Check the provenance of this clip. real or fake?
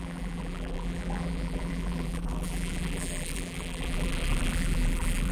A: fake